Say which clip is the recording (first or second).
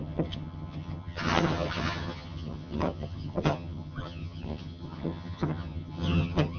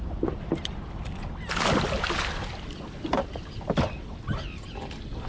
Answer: second